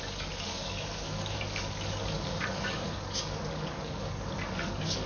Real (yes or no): no